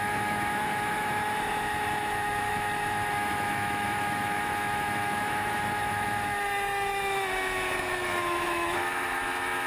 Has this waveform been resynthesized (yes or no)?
yes